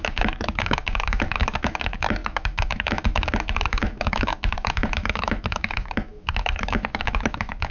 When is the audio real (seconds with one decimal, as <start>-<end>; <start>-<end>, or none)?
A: none